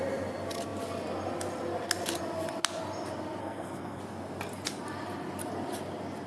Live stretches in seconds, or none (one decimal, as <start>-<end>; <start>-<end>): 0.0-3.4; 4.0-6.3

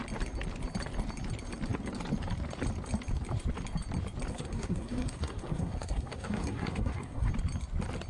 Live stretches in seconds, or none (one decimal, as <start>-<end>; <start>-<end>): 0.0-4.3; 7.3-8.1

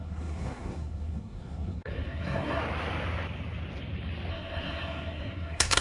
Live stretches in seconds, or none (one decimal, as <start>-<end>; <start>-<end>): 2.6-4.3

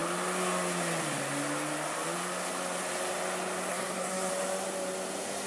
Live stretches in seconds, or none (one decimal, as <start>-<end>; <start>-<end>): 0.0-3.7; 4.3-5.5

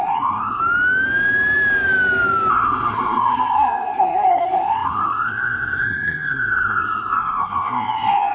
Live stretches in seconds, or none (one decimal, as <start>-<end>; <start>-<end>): 0.6-2.5

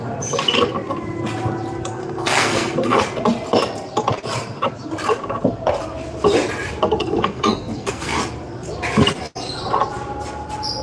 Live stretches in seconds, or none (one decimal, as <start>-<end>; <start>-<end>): 0.0-2.0; 3.0-7.0; 8.2-10.8